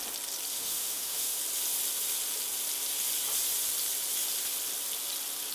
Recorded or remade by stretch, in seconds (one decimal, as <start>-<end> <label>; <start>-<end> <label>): 0.0-0.5 recorded; 0.5-1.4 remade; 1.4-5.5 recorded